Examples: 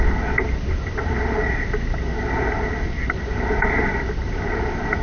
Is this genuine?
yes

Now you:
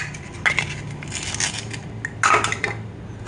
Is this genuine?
yes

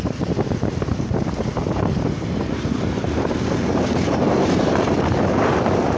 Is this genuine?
no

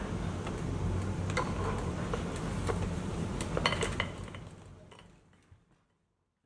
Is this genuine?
yes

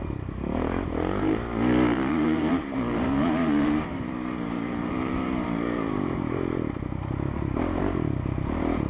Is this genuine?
no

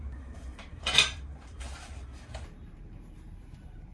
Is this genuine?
no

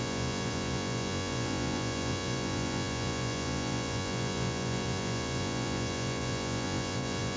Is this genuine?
no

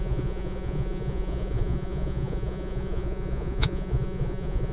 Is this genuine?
no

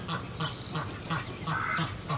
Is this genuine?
yes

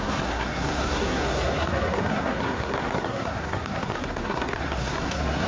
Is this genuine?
no